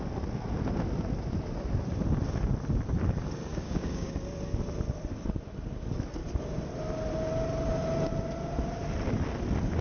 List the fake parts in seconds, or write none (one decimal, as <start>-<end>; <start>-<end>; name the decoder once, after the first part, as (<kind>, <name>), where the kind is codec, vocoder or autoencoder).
3.5-4.1 (codec, DAC)